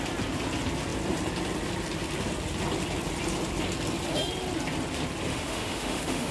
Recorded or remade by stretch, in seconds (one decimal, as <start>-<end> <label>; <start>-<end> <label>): 0.0-5.3 recorded; 5.3-6.3 remade